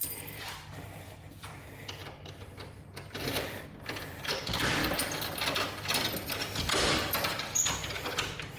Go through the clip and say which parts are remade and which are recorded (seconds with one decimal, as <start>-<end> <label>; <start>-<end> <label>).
0.0-4.8 remade; 4.8-6.1 recorded; 6.1-8.6 remade